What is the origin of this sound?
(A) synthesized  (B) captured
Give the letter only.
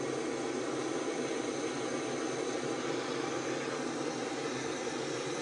B